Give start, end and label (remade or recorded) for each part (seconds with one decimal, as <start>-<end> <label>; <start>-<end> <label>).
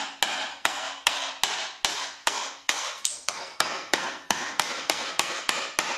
0.0-0.5 recorded; 0.5-1.3 remade; 1.3-1.9 recorded; 1.9-5.5 remade; 5.5-6.0 recorded